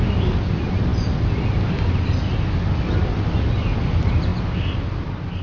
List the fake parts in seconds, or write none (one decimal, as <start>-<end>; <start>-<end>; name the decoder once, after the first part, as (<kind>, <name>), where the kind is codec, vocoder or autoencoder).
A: none